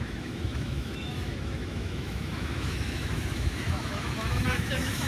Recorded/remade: remade